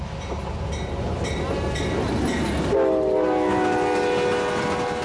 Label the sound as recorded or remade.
recorded